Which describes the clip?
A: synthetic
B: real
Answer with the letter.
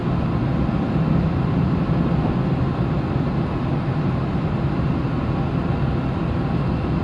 B